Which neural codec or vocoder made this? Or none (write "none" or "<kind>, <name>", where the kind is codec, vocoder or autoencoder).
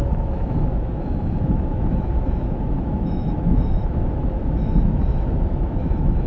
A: autoencoder, DAC-VAE